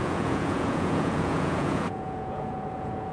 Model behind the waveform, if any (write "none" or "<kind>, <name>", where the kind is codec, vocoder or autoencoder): vocoder, Vocos